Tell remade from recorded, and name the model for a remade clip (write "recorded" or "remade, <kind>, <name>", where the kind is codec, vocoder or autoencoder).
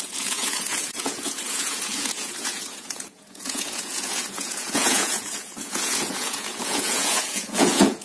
remade, vocoder, Vocos